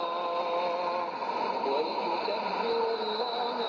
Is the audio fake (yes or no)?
no